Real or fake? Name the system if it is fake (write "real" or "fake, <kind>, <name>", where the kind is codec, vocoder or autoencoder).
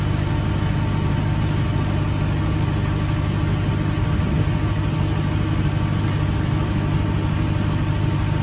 real